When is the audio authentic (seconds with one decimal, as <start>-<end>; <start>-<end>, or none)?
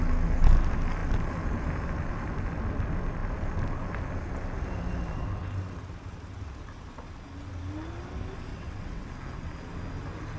0.0-8.5; 9.1-10.4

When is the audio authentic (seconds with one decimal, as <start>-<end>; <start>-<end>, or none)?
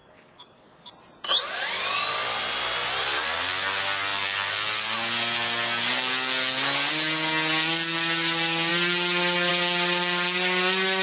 0.9-11.0